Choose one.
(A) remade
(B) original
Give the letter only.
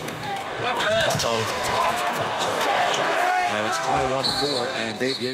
A